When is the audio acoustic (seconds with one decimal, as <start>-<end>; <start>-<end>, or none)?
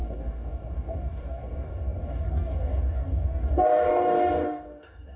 none